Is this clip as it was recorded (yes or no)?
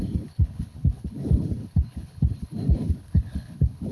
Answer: no